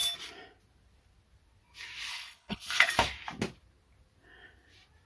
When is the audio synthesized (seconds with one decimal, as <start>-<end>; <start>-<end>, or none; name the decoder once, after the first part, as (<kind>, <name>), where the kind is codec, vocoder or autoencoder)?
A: 2.1-2.9 (codec, HILCodec)